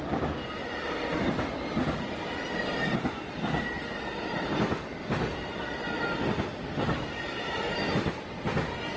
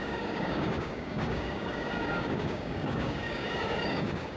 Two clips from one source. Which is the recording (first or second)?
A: first